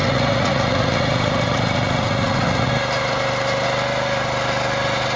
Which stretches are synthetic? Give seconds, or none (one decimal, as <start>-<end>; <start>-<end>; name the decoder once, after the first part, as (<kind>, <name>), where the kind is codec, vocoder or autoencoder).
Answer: 0.0-2.7 (vocoder, Vocos)